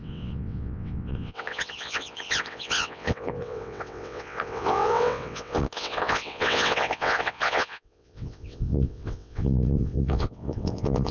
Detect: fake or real fake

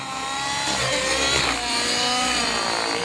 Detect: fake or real real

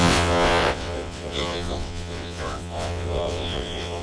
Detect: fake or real fake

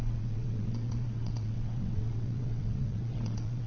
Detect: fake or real fake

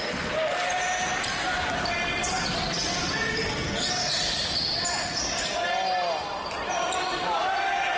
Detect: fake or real real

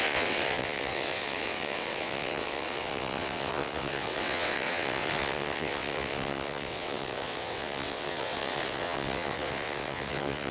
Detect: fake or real fake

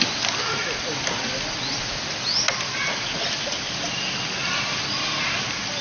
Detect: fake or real real